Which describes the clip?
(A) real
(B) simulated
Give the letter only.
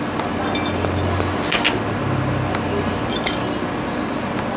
A